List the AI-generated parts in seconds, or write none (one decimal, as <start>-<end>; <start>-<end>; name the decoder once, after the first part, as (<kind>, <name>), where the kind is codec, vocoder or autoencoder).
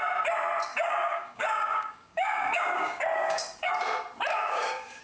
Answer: 0.7-3.7 (codec, DAC); 4.3-5.0